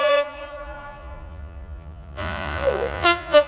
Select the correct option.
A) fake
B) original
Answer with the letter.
A